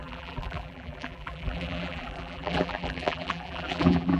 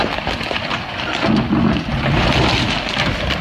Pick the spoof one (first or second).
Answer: first